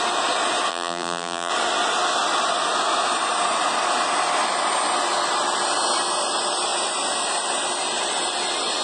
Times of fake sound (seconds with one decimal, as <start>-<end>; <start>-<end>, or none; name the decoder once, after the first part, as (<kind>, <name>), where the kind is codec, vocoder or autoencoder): 0.7-1.5 (vocoder, BigVGAN v2)